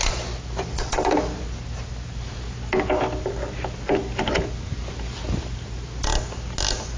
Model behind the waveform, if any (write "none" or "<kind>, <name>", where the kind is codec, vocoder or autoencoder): none